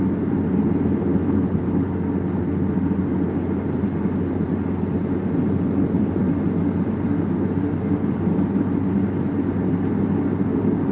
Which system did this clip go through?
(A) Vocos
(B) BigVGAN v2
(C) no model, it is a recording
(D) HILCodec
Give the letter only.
C